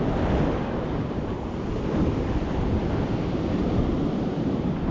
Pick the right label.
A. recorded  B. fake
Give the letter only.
B